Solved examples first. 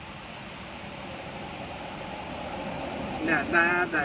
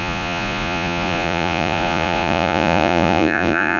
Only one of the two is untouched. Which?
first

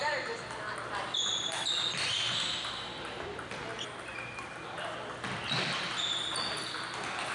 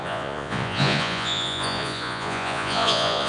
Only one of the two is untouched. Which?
first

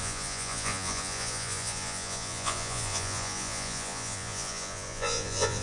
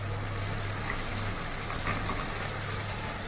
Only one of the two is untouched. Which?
second